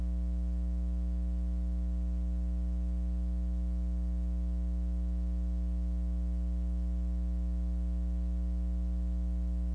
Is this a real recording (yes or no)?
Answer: yes